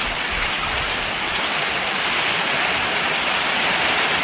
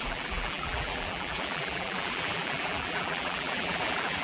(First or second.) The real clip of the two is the first